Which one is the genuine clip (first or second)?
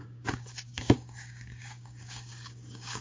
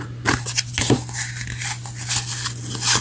second